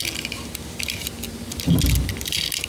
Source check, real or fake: real